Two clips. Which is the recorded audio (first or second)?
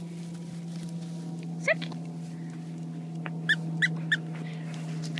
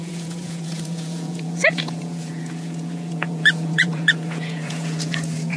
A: first